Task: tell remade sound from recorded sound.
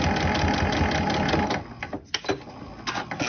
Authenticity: recorded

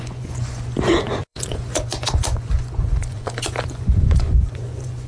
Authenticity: remade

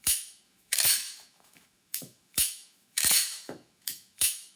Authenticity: remade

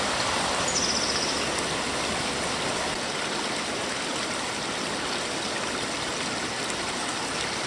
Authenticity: recorded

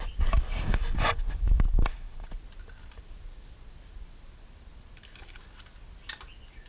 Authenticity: recorded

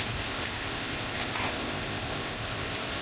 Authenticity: remade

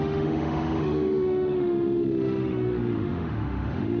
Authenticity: remade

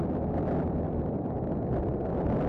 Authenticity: remade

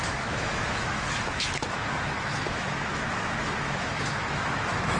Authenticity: remade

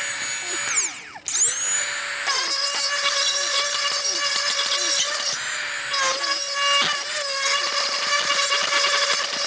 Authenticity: recorded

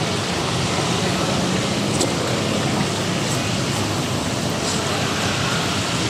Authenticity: recorded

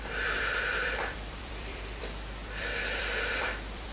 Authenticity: remade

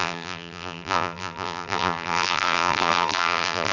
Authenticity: remade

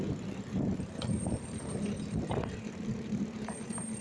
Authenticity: remade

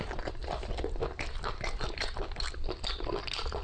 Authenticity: recorded